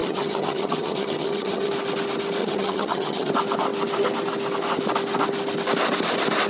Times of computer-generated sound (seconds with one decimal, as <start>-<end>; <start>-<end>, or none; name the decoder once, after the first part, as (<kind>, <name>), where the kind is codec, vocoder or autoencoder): 0.0-1.7 (vocoder, HiFi-GAN); 2.4-3.3